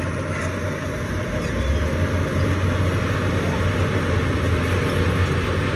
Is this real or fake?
real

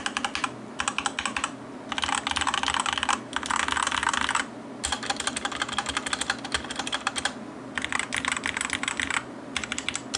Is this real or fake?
real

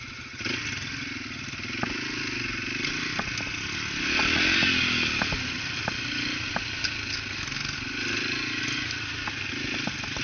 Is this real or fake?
real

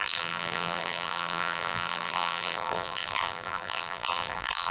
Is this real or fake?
fake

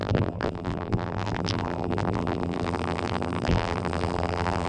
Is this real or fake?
fake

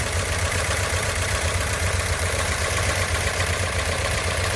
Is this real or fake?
fake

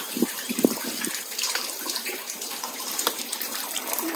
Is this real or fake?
fake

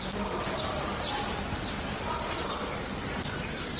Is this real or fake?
real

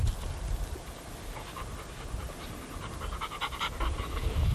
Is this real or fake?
real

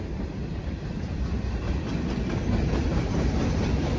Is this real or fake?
fake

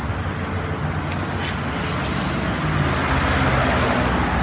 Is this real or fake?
real